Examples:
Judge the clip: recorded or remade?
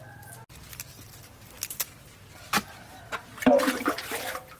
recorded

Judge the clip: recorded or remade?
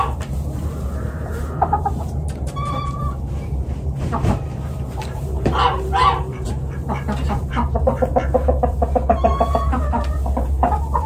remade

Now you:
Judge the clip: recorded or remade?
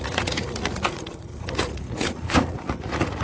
remade